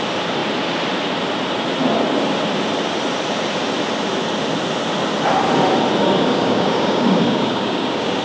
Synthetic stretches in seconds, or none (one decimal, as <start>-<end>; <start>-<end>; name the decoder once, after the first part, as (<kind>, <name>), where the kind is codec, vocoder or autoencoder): 6.0-8.2 (codec, DAC)